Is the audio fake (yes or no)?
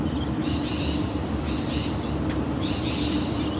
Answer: no